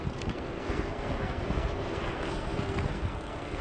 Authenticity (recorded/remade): remade